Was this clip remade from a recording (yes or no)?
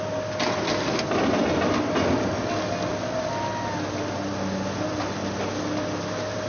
no